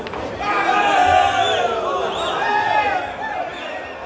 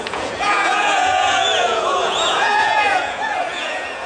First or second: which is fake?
second